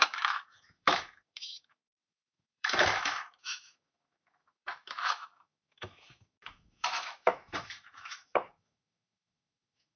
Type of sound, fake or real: fake